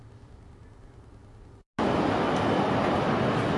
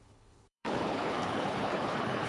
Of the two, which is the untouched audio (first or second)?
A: first